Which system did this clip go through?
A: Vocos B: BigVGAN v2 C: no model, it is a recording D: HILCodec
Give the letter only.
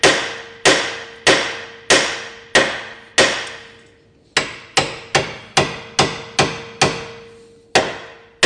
C